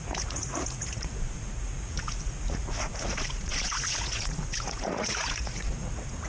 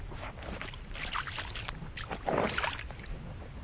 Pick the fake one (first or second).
first